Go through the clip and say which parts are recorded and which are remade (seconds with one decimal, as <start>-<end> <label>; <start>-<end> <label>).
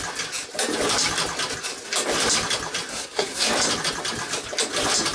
0.0-2.9 recorded; 2.9-3.5 remade; 3.5-5.1 recorded